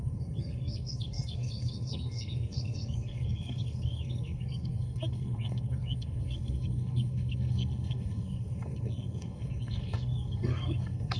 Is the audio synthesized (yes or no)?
yes